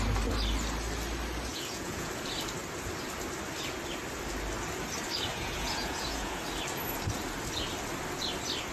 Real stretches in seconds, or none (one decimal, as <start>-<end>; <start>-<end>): 0.0-1.5; 2.1-5.3; 6.4-8.7